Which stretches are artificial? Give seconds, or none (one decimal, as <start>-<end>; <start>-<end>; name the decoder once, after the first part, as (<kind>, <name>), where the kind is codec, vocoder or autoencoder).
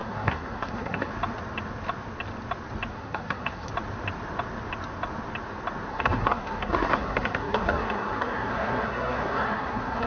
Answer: 0.0-1.1 (codec, SNAC); 2.9-3.7; 5.9-10.1